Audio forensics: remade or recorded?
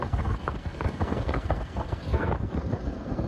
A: remade